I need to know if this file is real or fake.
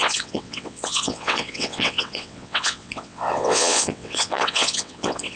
fake